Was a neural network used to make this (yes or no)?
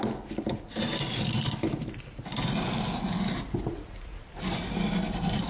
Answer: no